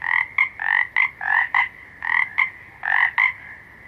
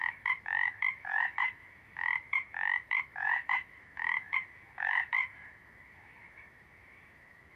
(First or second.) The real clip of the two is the first